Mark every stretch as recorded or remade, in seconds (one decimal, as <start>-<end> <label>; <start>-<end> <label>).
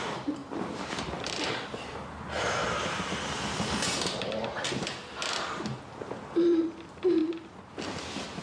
0.0-2.6 remade; 2.6-6.3 recorded; 6.3-8.4 remade